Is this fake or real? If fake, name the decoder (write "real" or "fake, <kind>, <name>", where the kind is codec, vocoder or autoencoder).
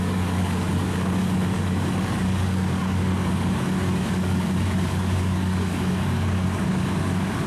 fake, codec, DAC